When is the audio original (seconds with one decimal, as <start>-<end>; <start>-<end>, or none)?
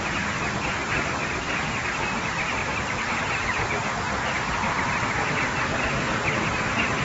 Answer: 0.0-2.6; 3.2-7.0